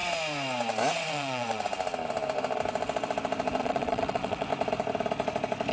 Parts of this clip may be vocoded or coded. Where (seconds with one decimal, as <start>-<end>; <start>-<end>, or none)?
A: 0.9-1.7; 3.6-4.5